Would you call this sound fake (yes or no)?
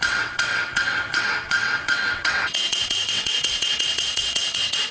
yes